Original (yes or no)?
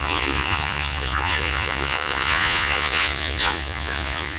no